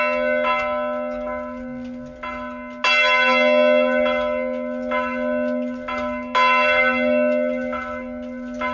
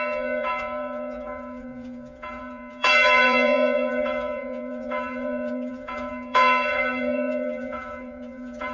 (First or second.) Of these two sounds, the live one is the first